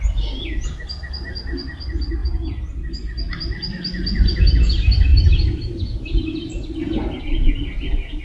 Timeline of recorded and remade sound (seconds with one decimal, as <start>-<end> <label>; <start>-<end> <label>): 0.0-8.2 recorded